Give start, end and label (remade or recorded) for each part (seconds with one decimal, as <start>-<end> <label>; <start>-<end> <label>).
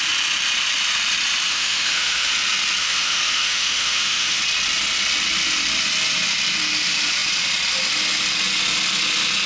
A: 0.0-1.5 recorded; 1.5-2.3 remade; 2.3-2.8 recorded; 2.8-4.4 remade; 4.4-9.5 recorded